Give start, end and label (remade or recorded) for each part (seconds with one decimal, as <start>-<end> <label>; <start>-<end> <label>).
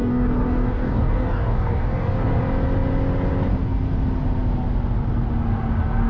0.0-2.4 remade; 2.4-6.1 recorded